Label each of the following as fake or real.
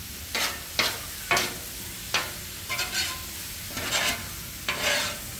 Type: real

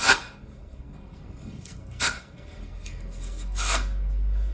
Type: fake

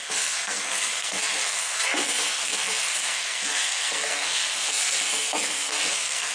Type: fake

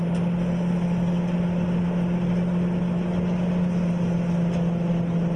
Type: real